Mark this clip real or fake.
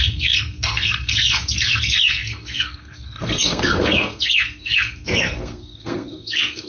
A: fake